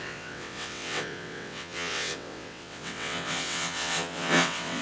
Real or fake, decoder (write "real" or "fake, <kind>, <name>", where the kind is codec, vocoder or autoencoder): fake, vocoder, WaveNeXt